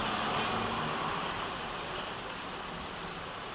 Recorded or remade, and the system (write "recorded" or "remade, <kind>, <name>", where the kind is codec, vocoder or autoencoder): recorded